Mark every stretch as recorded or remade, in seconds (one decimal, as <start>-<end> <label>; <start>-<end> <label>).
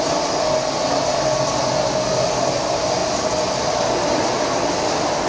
0.0-5.3 recorded